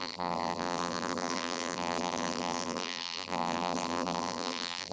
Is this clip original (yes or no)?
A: no